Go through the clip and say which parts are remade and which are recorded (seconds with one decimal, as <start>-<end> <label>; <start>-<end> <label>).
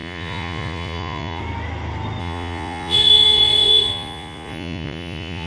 0.0-1.4 remade; 1.4-2.2 recorded; 2.2-5.5 remade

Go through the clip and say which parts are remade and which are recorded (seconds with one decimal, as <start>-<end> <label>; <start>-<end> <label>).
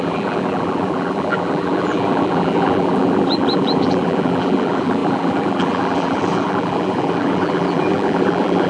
0.0-8.7 remade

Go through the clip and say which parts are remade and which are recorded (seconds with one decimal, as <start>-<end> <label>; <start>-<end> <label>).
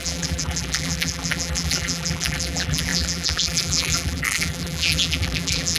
0.0-5.8 remade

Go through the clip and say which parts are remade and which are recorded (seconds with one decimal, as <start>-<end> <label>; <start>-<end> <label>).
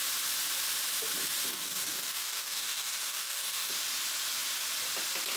0.0-1.5 recorded; 1.5-3.7 remade; 3.7-5.4 recorded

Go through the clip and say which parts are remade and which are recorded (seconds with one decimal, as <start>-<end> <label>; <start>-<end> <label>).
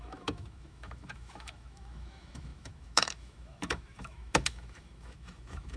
0.0-5.8 remade